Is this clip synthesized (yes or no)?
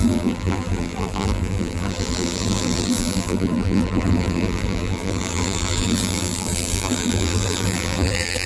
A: yes